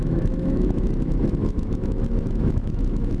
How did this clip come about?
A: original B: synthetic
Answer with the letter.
B